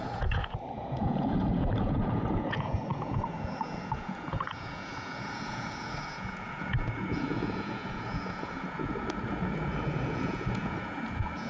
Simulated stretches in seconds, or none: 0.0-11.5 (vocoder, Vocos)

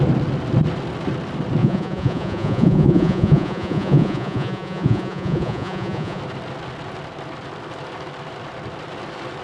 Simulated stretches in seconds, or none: 1.6-6.2 (vocoder, Vocos)

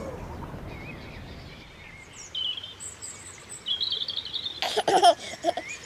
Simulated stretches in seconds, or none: none

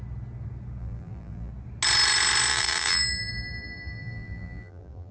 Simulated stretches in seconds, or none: 0.8-1.5 (vocoder, BigVGAN v2); 2.5-5.1